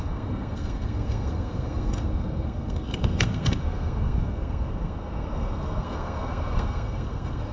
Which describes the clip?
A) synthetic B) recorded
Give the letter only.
A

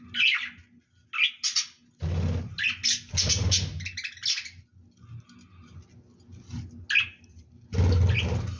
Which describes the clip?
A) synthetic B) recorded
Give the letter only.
B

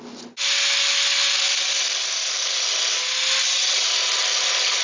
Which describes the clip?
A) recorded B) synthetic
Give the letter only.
A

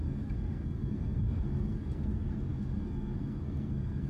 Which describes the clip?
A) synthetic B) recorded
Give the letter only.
A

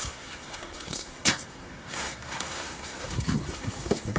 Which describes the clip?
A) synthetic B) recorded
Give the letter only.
A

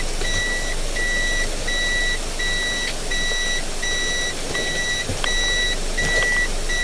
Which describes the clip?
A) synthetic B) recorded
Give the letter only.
B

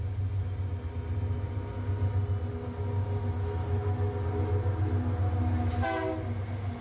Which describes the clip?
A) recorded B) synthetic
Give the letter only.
A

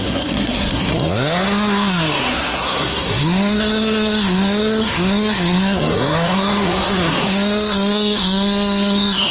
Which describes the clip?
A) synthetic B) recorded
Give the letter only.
A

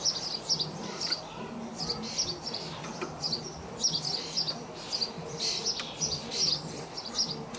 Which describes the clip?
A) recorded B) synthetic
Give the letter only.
A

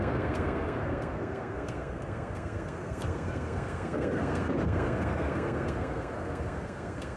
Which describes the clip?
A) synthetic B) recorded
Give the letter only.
A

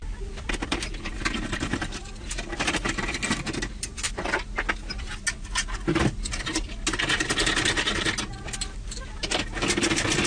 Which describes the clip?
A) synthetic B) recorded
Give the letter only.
B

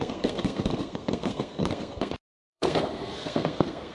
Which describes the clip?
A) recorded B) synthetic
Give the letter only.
B